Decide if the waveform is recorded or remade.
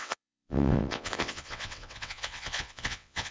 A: remade